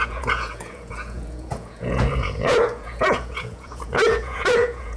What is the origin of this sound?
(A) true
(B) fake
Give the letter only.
B